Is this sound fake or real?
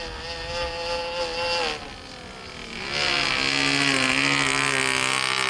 real